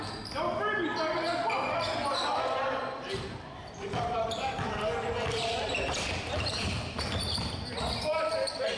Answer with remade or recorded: remade